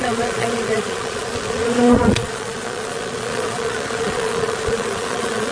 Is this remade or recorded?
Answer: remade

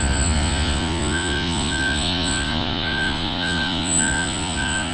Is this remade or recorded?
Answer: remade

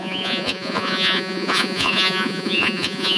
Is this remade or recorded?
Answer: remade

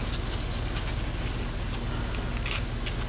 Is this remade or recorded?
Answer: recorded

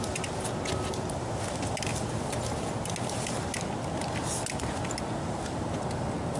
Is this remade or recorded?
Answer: recorded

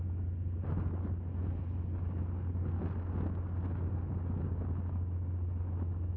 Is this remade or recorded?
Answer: recorded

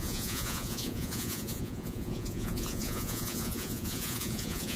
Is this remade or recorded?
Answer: remade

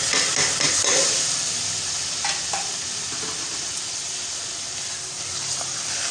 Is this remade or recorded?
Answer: recorded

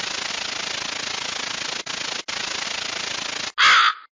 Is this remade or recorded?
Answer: recorded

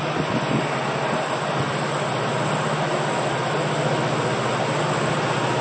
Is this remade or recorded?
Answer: recorded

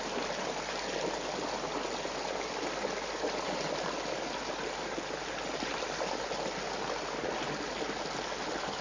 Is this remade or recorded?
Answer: recorded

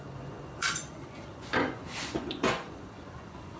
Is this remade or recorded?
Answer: remade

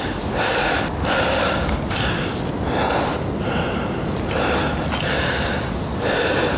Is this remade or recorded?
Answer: recorded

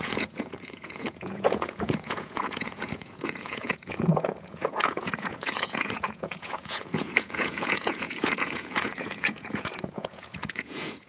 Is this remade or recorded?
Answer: remade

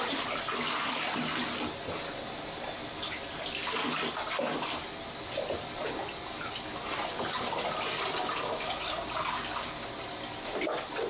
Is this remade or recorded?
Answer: recorded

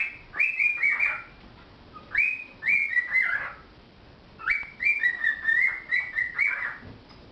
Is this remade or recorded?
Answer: recorded